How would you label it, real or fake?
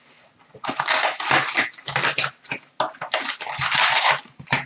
real